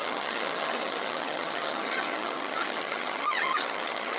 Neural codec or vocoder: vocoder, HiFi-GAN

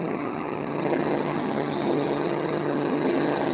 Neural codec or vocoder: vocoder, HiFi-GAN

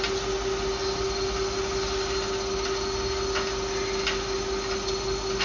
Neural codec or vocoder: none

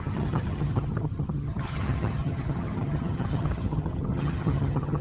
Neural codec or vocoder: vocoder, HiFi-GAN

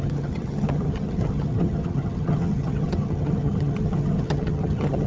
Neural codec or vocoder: vocoder, HiFi-GAN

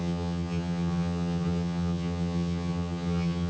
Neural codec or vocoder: vocoder, HiFi-GAN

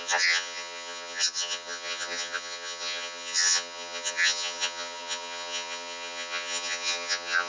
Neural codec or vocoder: vocoder, HiFi-GAN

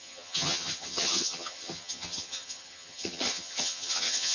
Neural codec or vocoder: vocoder, HiFi-GAN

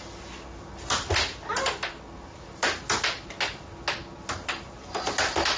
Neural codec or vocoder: none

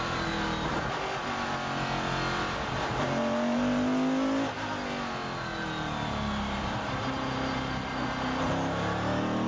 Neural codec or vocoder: none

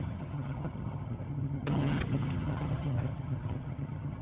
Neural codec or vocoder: vocoder, HiFi-GAN